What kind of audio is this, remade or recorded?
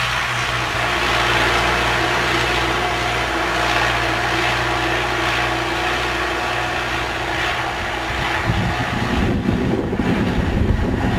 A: recorded